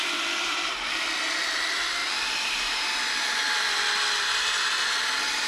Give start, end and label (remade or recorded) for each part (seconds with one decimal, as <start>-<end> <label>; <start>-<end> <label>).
0.0-5.5 remade